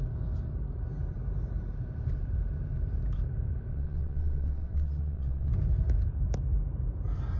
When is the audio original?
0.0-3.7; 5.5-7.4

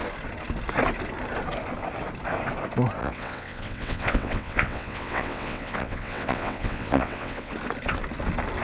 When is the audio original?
0.0-3.0; 7.5-8.6

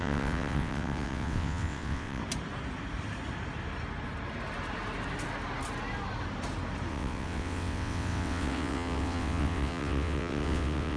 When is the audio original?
2.2-6.9

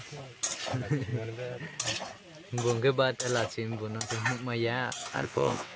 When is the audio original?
0.0-5.0

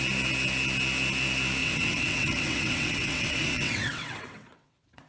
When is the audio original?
0.0-1.6

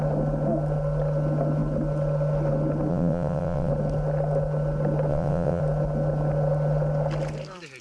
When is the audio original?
0.0-2.9; 3.7-5.1; 5.6-7.8

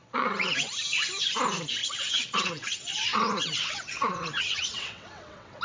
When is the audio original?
0.7-1.8